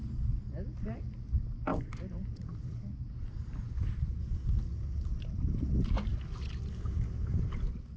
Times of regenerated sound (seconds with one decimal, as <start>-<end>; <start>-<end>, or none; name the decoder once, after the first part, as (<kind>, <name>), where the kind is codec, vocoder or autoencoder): 1.7-4.2 (vocoder, BigVGAN v2)